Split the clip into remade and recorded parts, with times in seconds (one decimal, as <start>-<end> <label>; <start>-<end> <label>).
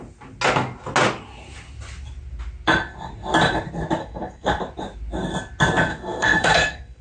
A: 0.0-4.0 recorded; 4.0-4.6 remade; 4.6-5.9 recorded; 5.9-7.0 remade